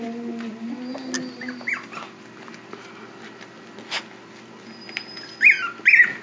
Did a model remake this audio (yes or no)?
no